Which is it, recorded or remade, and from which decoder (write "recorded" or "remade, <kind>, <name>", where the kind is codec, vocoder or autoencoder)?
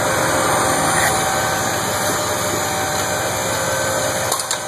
recorded